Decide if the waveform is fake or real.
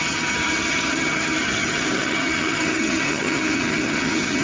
fake